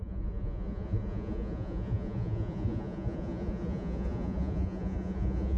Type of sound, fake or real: fake